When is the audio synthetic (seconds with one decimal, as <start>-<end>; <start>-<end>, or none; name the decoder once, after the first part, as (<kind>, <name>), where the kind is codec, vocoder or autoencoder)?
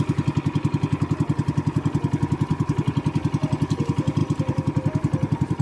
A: 4.2-5.6 (vocoder, BigVGAN v2)